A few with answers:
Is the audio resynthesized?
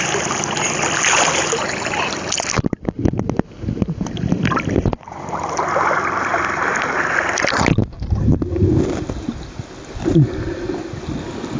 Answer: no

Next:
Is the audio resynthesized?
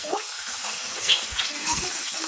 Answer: yes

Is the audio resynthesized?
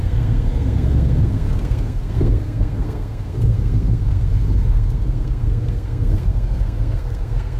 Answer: yes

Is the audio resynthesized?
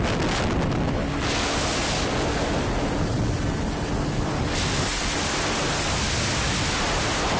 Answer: no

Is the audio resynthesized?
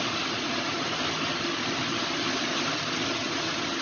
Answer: no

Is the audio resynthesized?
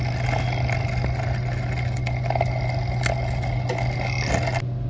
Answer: no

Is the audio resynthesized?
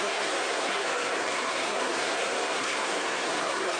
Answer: yes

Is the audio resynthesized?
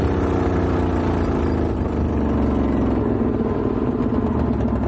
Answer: no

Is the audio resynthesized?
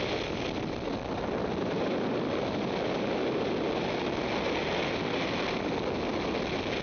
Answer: no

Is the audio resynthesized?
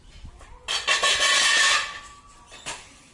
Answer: no